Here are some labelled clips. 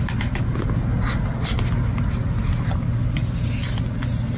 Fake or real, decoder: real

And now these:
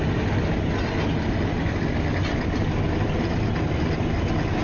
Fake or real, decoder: real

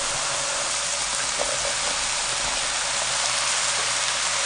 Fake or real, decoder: real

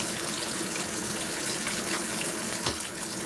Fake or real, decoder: fake, codec, HILCodec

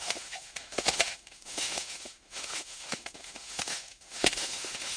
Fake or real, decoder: fake, autoencoder, DAC-VAE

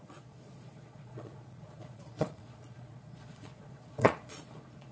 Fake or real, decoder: fake, vocoder, Vocos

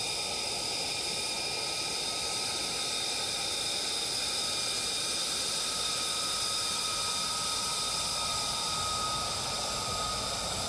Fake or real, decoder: real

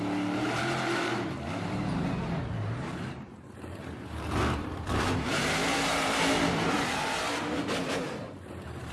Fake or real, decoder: fake, vocoder, BigVGAN v2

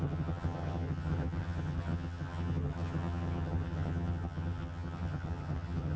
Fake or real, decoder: fake, vocoder, HiFi-GAN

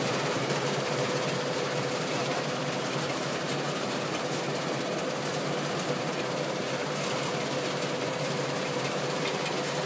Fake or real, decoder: fake, vocoder, BigVGAN v2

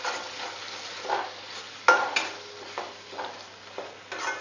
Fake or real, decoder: real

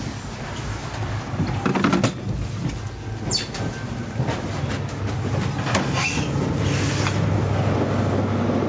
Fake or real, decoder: real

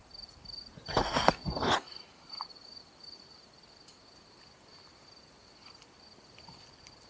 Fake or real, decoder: real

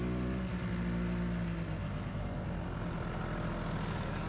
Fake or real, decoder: real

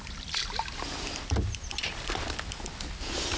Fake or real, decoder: real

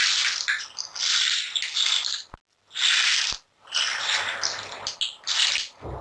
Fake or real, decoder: real